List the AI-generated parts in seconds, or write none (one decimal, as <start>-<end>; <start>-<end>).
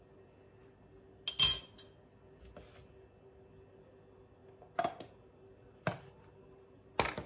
none